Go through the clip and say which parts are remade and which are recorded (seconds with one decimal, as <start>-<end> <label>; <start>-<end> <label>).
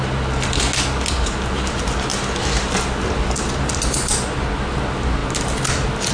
0.0-6.1 recorded